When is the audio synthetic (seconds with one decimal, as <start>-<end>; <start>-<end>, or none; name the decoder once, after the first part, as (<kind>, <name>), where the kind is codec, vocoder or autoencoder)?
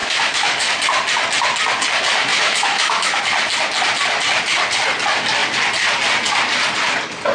0.0-0.7 (autoencoder, DAC-VAE); 2.3-3.2